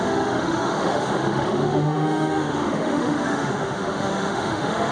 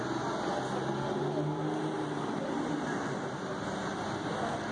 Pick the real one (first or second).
second